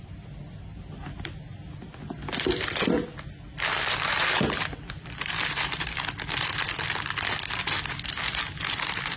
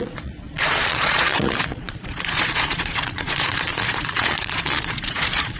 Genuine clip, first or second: first